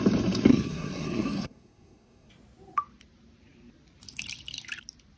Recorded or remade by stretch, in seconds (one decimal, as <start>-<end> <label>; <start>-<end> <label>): 0.0-0.5 recorded; 0.5-2.3 remade; 2.3-5.2 recorded